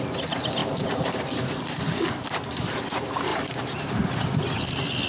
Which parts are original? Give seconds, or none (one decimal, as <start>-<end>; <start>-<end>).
0.0-0.6; 2.8-3.3; 3.9-5.1